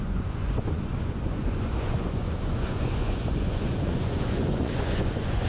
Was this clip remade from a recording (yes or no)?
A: yes